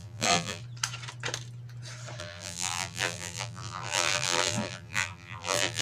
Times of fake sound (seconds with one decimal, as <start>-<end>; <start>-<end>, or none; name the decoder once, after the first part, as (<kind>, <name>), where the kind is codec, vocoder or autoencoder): 0.0-0.6 (vocoder, BigVGAN v2); 2.2-5.8